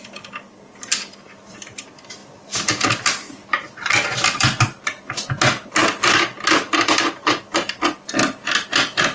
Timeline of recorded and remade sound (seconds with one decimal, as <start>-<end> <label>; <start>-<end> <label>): 0.0-9.1 recorded